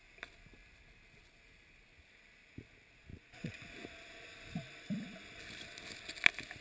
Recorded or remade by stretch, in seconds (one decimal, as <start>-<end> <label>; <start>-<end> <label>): 0.0-3.1 recorded; 3.1-3.6 remade; 3.6-6.6 recorded